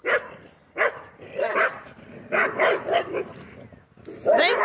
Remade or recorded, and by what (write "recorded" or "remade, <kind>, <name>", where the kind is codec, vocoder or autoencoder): recorded